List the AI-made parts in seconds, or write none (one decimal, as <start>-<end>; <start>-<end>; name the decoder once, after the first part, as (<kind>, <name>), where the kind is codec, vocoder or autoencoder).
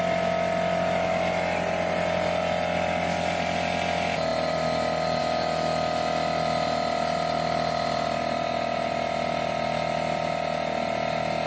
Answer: none